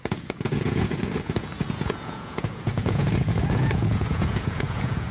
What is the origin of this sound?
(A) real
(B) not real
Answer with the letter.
B